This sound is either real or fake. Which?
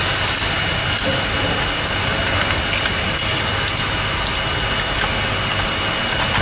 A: real